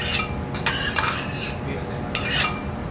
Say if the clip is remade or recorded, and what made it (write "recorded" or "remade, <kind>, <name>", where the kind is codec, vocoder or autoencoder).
recorded